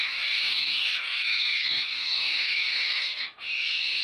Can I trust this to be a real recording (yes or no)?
no